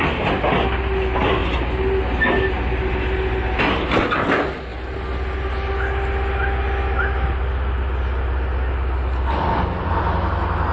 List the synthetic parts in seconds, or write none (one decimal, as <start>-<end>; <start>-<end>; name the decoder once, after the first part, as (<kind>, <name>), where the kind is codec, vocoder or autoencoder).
none